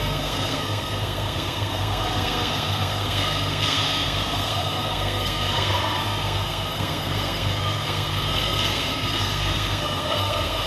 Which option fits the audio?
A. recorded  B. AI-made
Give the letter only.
B